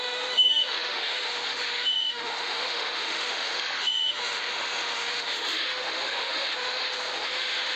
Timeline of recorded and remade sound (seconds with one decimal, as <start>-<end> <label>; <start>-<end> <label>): 0.0-7.8 remade